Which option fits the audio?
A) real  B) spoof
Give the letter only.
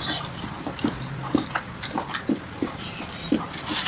B